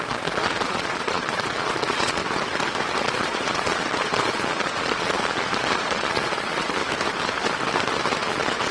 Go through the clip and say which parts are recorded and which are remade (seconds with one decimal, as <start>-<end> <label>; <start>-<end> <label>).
0.0-2.2 remade; 2.2-3.0 recorded; 3.0-6.8 remade; 6.8-8.2 recorded; 8.2-8.7 remade